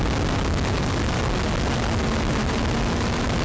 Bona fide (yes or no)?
yes